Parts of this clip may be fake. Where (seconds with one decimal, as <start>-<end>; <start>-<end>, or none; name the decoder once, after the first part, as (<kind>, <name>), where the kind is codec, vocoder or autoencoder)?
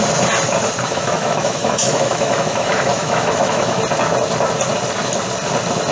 0.9-3.8 (autoencoder, DAC-VAE)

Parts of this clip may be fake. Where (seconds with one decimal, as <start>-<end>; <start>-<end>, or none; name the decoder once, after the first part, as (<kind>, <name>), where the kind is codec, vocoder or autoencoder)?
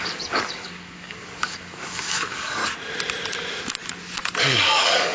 0.0-2.6 (codec, DAC); 4.4-5.1